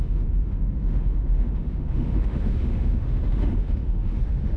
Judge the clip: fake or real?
fake